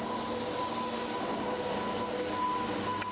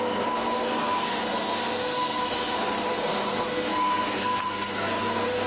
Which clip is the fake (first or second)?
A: second